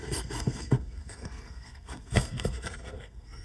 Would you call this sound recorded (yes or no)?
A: no